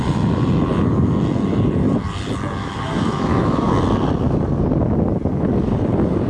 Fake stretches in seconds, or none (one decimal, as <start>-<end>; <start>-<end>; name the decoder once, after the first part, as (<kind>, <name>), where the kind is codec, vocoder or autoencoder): 2.6-3.7 (autoencoder, DAC-VAE)